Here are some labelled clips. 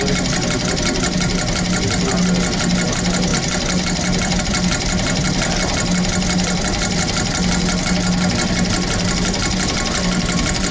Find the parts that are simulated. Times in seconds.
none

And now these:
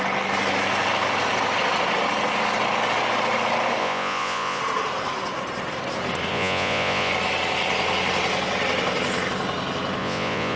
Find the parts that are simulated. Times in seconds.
3.8-4.6; 6.3-7.1; 10.0-10.6

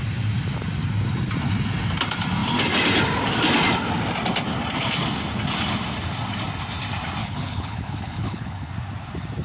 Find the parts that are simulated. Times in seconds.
7.2-8.7

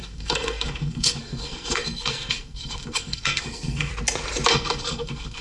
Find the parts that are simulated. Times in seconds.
0.0-3.9; 4.5-5.4